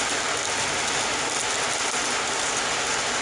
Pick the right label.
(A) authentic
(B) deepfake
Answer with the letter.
A